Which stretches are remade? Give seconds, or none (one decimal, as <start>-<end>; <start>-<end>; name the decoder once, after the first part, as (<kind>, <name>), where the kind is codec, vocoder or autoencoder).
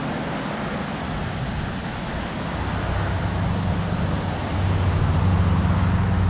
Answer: none